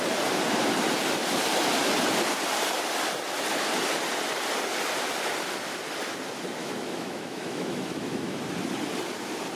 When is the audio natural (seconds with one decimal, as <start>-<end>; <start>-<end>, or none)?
0.0-6.6; 8.4-9.6

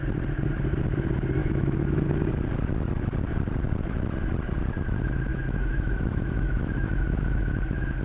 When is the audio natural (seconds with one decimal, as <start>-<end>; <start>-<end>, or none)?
0.0-1.4; 2.1-5.3

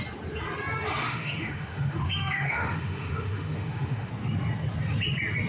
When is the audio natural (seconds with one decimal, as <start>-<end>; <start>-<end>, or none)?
0.0-1.0; 4.1-5.5

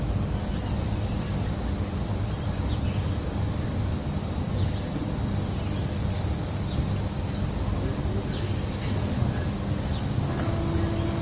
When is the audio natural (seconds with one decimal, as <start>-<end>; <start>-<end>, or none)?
0.0-11.2

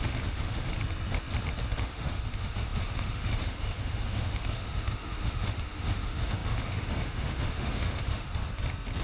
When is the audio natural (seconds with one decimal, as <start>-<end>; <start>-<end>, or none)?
0.7-1.8; 8.4-9.0

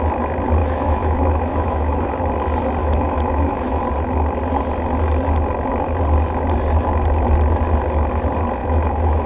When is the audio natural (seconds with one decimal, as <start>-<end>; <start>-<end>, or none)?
0.0-0.6; 2.1-2.8; 3.8-8.6